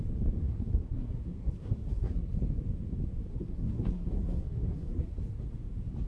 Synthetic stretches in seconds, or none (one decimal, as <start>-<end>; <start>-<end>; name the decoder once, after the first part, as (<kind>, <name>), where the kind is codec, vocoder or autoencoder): 0.4-2.3 (codec, SNAC); 3.3-5.2